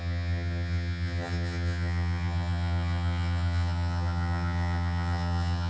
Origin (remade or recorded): remade